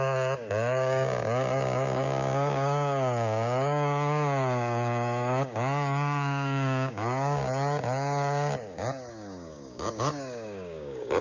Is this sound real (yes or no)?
no